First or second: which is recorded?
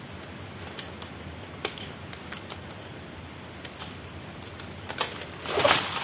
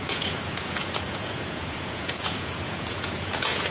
first